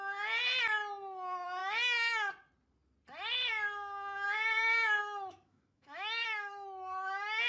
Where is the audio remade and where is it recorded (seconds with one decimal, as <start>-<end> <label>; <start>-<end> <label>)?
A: 0.0-1.6 recorded; 1.6-2.3 remade; 2.3-5.0 recorded; 5.0-7.5 remade